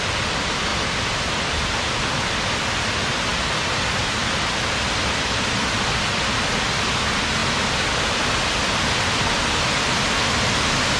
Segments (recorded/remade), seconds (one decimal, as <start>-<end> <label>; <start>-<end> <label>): 0.0-11.0 recorded